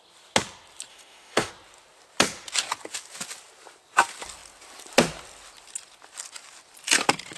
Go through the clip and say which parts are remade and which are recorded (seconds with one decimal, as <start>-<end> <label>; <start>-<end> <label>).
0.0-0.9 recorded; 0.9-1.5 remade; 1.5-7.4 recorded